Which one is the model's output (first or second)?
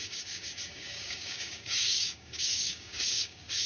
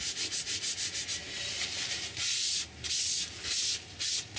first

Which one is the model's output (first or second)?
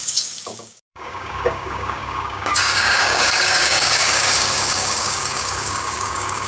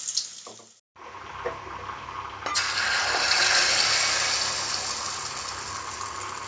first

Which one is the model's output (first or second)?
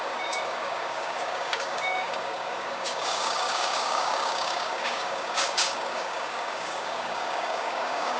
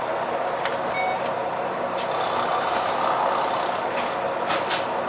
first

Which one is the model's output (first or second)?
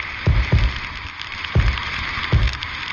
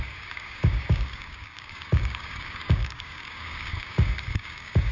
second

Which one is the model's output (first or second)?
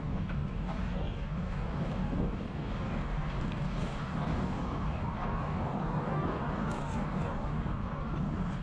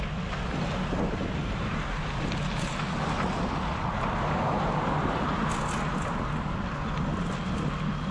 first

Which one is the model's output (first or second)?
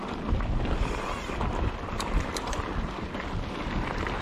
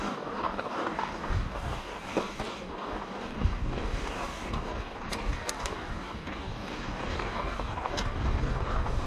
second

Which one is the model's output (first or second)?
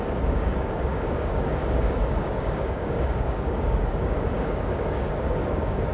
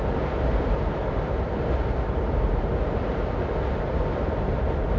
first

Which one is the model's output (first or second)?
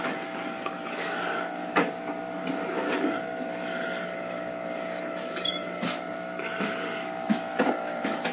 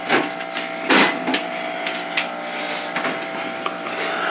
first